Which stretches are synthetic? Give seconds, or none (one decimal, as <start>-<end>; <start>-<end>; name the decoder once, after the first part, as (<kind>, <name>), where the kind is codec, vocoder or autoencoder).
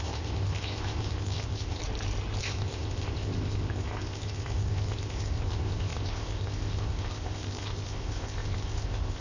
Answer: 0.0-1.8 (codec, ZipCodec); 2.4-9.2